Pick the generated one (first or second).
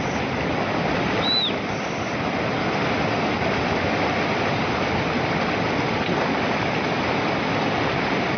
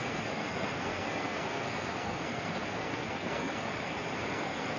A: second